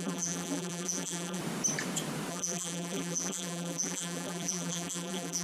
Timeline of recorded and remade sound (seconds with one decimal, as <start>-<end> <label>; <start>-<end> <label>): 0.0-1.4 remade; 1.4-2.3 recorded; 2.3-5.4 remade